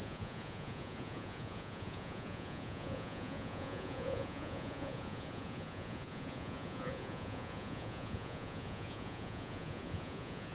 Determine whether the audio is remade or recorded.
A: remade